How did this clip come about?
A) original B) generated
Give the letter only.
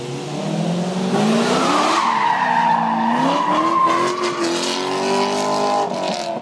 A